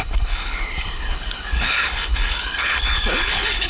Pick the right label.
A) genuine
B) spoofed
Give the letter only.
B